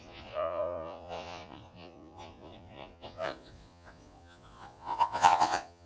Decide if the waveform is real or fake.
fake